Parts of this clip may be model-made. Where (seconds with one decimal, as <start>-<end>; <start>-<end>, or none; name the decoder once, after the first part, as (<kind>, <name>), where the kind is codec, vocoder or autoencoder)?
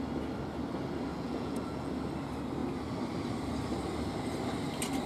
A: 1.1-1.9 (vocoder, Vocos)